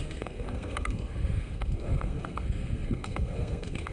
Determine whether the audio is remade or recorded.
remade